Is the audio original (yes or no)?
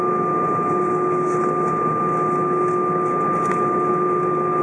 yes